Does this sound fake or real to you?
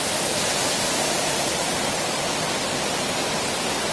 real